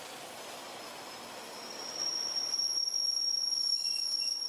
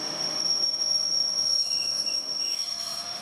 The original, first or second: first